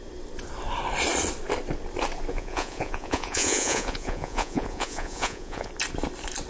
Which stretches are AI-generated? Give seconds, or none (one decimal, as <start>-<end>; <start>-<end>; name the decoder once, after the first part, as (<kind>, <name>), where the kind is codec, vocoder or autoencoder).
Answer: 2.3-5.7 (vocoder, Vocos)